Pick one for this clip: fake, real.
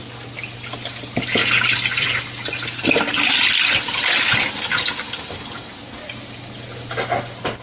real